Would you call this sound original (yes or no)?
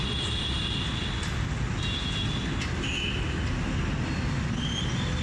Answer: yes